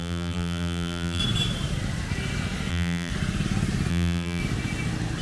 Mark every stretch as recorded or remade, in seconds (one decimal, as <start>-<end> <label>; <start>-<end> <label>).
0.0-1.2 remade; 1.2-2.7 recorded; 2.7-3.1 remade; 3.1-3.9 recorded; 3.9-4.4 remade; 4.4-5.2 recorded